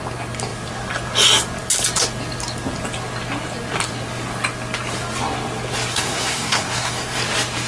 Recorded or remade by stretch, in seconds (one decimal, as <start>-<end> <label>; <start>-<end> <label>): 0.0-5.9 recorded; 5.9-7.2 remade; 7.2-7.7 recorded